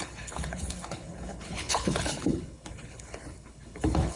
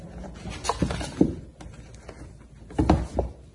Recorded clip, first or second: second